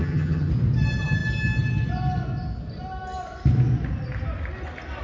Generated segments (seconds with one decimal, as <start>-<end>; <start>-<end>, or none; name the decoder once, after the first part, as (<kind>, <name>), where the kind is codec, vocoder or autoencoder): 0.0-0.5 (vocoder, HiFi-GAN)